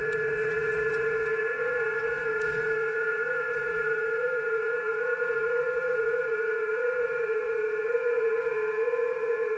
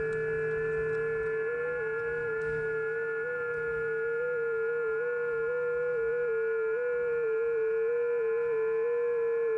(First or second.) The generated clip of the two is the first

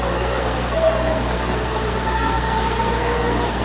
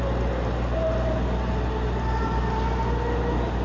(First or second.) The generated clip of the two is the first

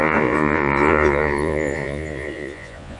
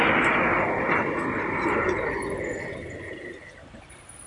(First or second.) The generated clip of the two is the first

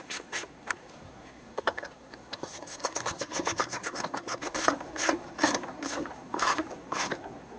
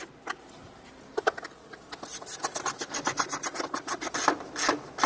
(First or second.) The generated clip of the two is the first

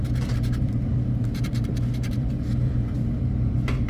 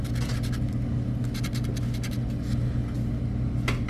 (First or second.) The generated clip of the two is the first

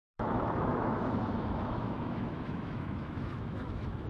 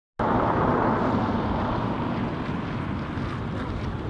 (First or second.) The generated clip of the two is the first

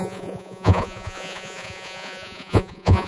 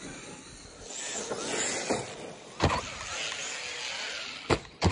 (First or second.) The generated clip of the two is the first